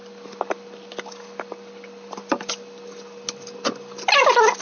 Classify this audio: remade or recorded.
recorded